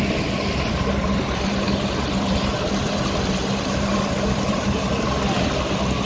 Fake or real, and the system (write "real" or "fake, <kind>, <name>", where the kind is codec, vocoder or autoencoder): real